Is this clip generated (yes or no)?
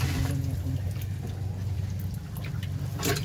no